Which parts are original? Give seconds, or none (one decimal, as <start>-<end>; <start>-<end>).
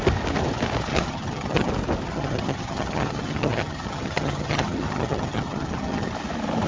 0.0-0.9; 1.7-2.1; 6.1-6.7